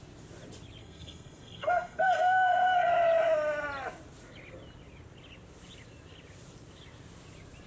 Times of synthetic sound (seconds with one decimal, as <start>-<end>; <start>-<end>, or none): 0.8-2.9